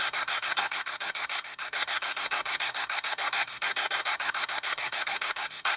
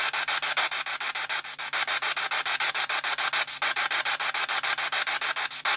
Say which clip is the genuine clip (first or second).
second